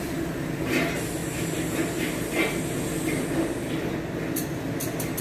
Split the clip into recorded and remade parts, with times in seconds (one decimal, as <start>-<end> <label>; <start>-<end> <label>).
0.0-5.2 recorded